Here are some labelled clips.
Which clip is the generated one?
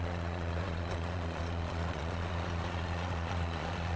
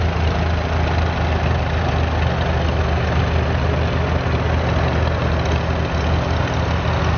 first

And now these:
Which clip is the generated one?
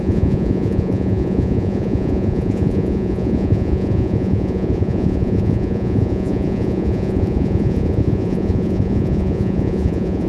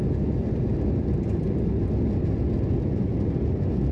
first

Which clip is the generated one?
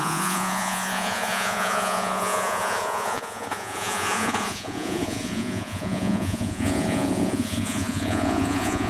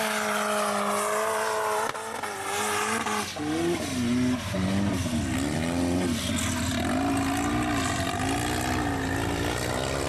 first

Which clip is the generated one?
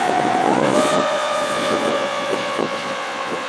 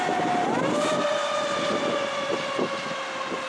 first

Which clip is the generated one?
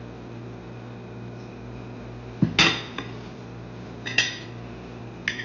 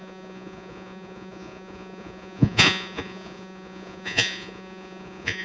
second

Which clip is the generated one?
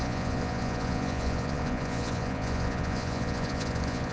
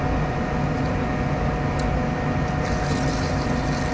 first